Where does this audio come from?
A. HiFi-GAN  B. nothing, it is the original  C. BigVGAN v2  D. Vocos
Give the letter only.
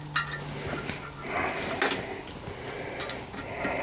B